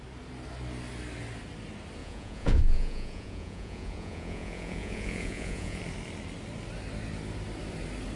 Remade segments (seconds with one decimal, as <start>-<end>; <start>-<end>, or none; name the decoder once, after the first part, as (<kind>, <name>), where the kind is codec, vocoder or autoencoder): 2.0-5.8 (vocoder, Vocos)